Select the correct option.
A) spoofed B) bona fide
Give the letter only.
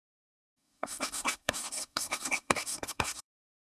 A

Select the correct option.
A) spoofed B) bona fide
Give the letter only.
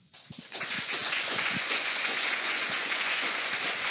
A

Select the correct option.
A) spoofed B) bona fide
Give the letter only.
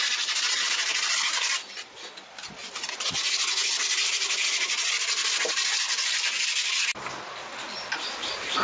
B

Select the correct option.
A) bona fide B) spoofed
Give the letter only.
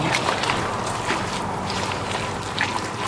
B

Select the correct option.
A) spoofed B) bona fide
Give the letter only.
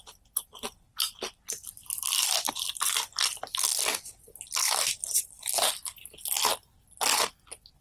B